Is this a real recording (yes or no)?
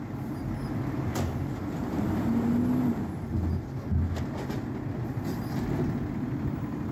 yes